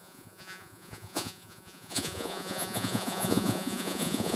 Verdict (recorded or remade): remade